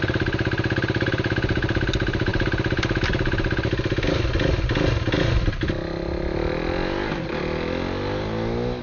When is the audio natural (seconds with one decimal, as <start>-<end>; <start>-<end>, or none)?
0.0-8.8